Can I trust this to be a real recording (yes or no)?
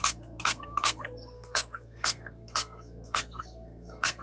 no